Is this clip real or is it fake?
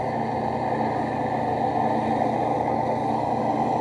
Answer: real